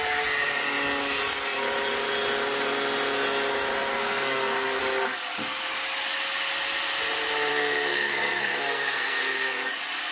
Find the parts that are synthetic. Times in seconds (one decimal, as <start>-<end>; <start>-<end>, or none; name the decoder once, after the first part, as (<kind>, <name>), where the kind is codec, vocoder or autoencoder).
3.9-4.8 (codec, SNAC); 7.5-9.7